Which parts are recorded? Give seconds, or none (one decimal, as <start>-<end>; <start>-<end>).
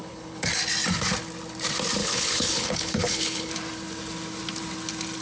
0.5-2.0; 3.5-5.2